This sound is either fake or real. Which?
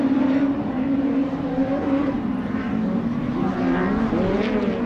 fake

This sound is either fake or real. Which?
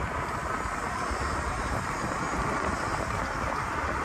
real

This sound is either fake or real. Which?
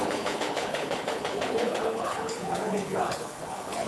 fake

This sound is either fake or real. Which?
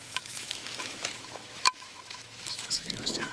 fake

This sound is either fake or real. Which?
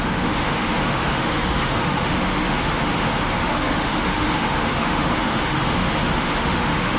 fake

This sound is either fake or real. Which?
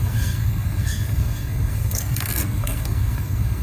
fake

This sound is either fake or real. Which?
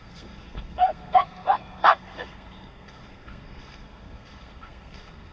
fake